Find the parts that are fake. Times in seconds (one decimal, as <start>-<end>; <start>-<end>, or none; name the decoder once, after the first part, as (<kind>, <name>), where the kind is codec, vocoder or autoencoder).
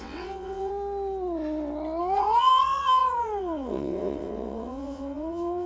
0.0-0.7 (vocoder, WaveNeXt); 2.0-5.7